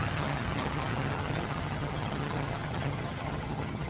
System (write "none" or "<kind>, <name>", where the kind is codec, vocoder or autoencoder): vocoder, HiFi-GAN